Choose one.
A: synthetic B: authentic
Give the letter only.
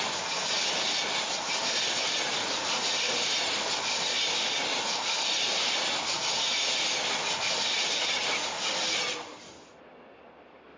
B